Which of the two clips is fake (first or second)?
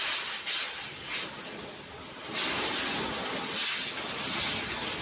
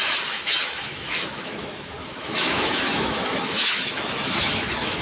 second